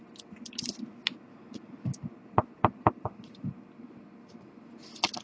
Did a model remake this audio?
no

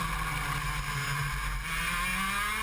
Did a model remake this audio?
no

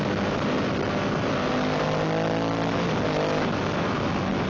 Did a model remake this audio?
no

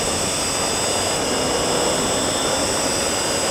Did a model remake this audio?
no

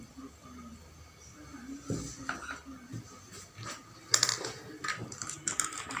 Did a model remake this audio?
no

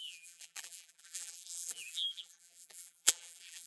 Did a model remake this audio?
yes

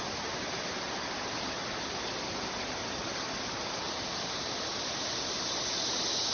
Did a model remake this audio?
no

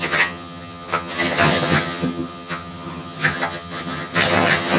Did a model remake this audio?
yes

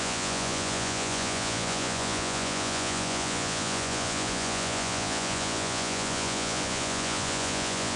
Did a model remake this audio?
yes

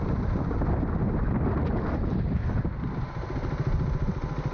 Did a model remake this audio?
no